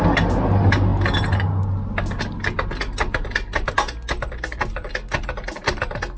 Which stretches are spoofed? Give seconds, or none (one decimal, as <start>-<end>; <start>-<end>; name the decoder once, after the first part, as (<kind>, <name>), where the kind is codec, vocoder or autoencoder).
none